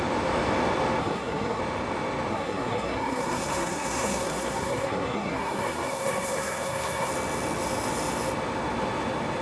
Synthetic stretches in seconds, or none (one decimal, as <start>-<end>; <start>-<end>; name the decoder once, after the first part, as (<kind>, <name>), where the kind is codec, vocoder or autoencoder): 1.0-1.6 (codec, SNAC); 2.3-7.1